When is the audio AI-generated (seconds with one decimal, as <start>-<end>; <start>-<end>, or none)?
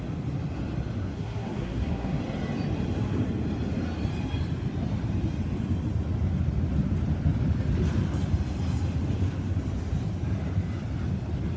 1.0-2.2